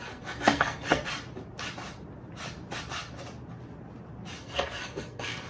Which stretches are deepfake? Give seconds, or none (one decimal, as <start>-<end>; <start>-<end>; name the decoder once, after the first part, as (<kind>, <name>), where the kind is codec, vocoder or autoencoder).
0.0-1.1 (codec, SNAC); 4.4-5.5

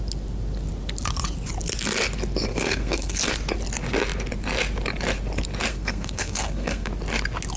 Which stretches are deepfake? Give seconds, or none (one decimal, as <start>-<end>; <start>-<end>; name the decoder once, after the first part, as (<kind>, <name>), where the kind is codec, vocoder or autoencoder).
2.5-3.2 (codec, SNAC); 5.7-6.9

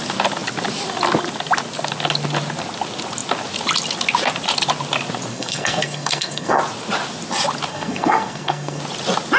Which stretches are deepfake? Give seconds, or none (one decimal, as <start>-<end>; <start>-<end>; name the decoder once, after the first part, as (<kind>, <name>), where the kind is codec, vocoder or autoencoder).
5.3-6.6 (codec, SNAC); 7.7-8.8

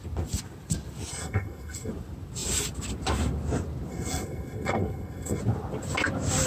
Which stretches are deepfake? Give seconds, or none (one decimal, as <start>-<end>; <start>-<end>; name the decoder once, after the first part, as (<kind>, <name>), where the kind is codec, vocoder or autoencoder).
1.1-1.9 (codec, SNAC); 3.9-5.4

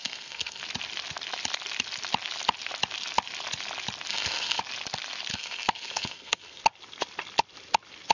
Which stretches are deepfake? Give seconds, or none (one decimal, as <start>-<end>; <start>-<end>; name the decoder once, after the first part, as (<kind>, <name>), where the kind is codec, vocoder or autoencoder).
0.0-0.6 (codec, SNAC); 4.1-4.6; 5.3-6.6

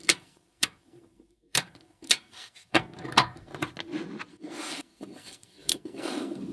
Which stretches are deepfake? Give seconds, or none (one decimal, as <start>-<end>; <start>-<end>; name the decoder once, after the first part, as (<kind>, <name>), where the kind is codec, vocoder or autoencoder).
0.0-3.5 (codec, SNAC); 4.3-6.5